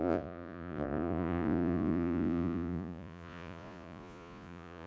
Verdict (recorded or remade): remade